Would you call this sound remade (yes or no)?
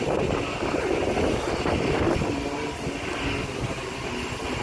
no